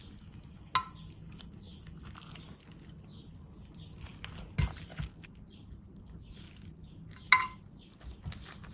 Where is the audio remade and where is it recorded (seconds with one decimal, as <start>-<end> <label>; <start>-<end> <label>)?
0.0-8.7 recorded